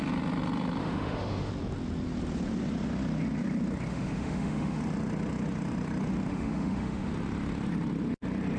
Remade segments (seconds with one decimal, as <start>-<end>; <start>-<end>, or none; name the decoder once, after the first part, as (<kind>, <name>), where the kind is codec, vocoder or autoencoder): 0.8-1.5 (autoencoder, DAC-VAE); 3.9-4.8; 6.3-7.1